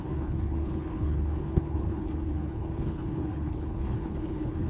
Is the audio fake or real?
fake